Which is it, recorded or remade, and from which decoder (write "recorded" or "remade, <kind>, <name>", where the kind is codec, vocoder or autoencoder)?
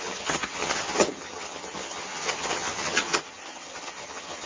remade, vocoder, HiFi-GAN